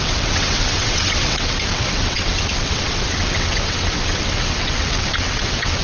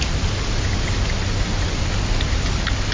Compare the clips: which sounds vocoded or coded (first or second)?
first